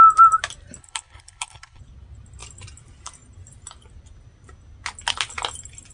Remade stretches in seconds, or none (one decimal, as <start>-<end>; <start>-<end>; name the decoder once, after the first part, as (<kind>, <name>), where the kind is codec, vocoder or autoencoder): 0.8-1.8 (codec, HILCodec)